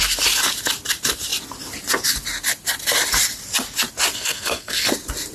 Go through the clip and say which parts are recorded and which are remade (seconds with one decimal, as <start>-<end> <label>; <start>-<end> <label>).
0.0-4.1 recorded; 4.1-4.8 remade; 4.8-5.3 recorded